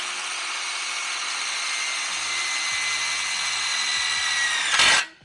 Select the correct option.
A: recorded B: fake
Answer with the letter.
A